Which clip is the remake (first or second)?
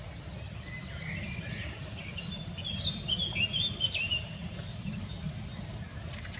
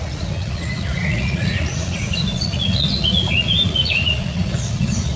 second